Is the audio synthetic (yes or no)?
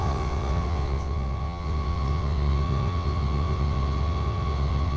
yes